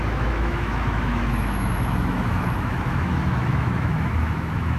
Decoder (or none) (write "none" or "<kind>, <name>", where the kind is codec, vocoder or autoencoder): autoencoder, DAC-VAE